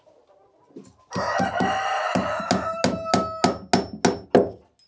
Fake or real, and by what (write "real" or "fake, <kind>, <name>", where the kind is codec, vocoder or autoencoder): real